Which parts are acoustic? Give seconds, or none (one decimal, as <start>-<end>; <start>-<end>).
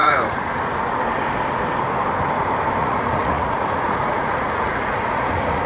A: 0.5-2.8